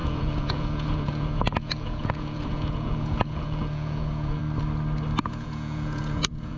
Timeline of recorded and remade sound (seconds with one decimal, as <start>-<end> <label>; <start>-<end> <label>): 0.0-4.4 remade; 4.4-5.2 recorded; 5.2-6.6 remade